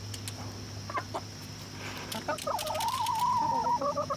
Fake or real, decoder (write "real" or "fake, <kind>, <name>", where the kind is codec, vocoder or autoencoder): real